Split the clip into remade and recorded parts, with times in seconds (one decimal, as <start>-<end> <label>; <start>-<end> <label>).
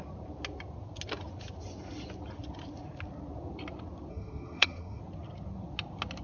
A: 0.0-4.1 recorded; 4.1-5.0 remade; 5.0-6.2 recorded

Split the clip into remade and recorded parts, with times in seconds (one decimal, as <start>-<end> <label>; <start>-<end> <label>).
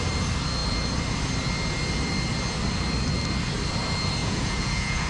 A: 0.0-4.2 recorded; 4.2-5.1 remade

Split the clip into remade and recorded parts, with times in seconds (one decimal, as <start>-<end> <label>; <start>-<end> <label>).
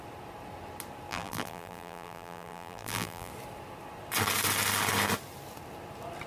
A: 0.0-1.1 recorded; 1.1-3.3 remade; 3.3-6.3 recorded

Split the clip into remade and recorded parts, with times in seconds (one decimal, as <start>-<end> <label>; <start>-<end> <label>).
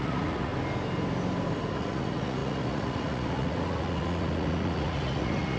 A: 0.0-0.5 remade; 0.5-1.7 recorded; 1.7-5.6 remade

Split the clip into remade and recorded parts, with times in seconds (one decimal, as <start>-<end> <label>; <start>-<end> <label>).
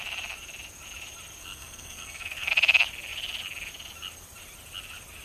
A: 0.0-1.4 recorded; 1.4-2.5 remade; 2.5-5.2 recorded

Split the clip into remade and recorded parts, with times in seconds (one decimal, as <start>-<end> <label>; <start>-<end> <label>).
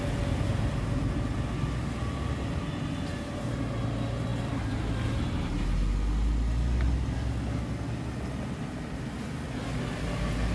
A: 0.0-4.3 recorded; 4.3-4.9 remade; 4.9-10.5 recorded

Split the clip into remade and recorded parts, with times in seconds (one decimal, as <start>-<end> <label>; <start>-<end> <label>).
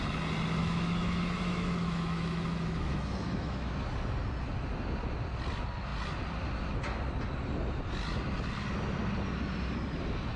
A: 0.0-0.6 recorded; 0.6-3.7 remade; 3.7-10.4 recorded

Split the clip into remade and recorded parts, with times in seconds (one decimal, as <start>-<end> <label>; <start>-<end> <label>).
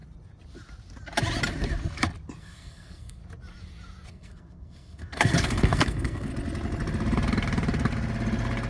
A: 0.0-2.4 recorded; 2.4-3.2 remade; 3.2-4.1 recorded; 4.1-6.3 remade; 6.3-8.7 recorded